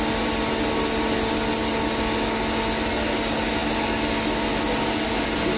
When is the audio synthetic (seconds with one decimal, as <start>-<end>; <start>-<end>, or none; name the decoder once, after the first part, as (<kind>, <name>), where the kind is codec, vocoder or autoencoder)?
none